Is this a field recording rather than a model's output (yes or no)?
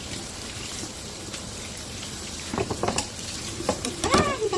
no